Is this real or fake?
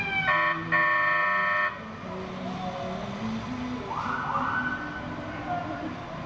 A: real